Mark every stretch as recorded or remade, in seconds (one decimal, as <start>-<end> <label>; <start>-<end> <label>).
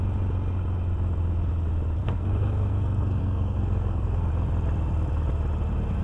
0.0-2.0 recorded; 2.0-4.3 remade; 4.3-6.0 recorded